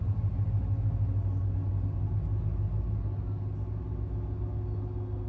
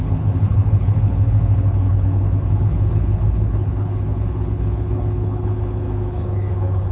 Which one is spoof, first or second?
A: second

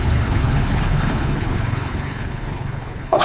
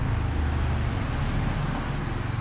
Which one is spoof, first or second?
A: first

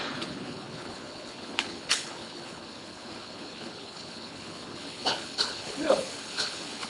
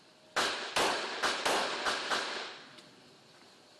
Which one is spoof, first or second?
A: first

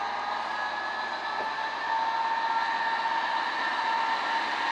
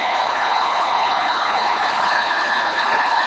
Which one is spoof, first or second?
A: second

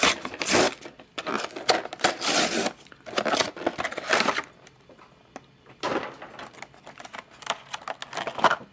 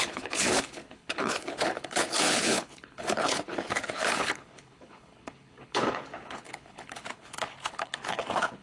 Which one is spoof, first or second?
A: second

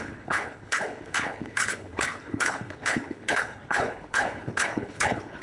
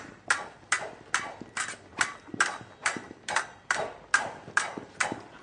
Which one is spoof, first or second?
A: first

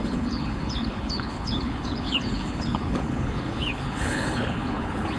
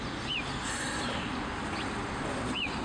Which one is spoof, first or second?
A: first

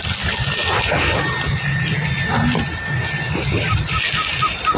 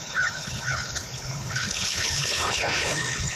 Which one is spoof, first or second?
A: second